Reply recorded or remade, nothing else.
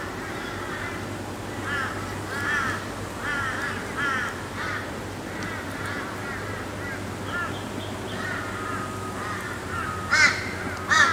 recorded